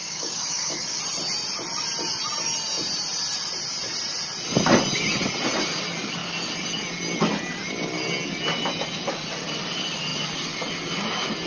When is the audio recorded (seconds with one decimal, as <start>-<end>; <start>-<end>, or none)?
1.0-11.5